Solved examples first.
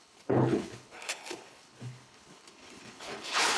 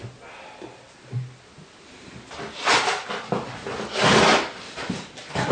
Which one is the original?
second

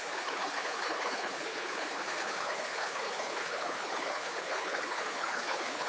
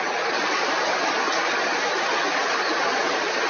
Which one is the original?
second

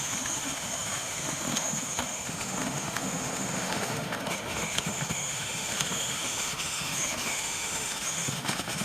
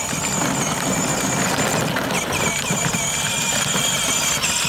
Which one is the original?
second